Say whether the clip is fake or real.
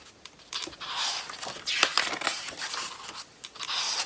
real